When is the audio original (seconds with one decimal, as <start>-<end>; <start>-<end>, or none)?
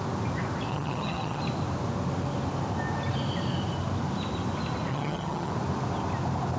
0.0-0.7; 1.4-4.9; 5.5-6.6